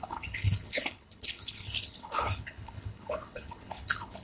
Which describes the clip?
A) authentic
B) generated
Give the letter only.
B